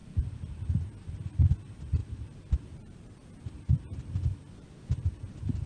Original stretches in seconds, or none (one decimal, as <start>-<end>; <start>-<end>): 0.0-5.7